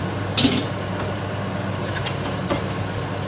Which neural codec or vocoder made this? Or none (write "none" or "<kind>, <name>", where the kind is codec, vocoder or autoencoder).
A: none